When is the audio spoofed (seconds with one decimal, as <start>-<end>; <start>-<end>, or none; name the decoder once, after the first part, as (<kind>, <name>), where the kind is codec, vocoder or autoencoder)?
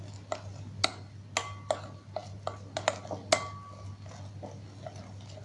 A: none